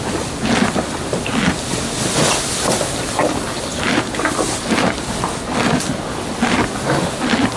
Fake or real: real